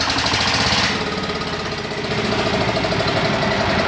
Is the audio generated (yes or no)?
no